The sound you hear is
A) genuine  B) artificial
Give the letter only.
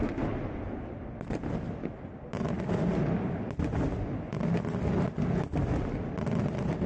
A